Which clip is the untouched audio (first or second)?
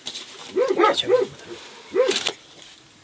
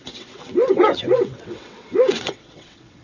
first